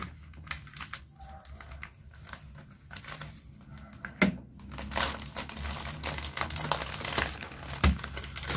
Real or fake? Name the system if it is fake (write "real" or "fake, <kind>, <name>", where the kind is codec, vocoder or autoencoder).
real